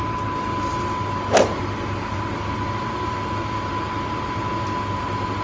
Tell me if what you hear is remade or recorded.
recorded